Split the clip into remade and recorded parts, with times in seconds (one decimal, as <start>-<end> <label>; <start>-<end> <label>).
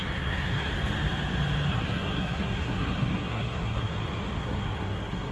0.0-0.7 remade; 0.7-1.7 recorded; 1.7-4.0 remade; 4.0-4.4 recorded; 4.4-5.3 remade